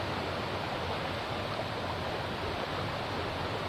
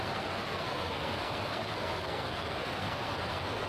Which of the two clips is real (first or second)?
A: first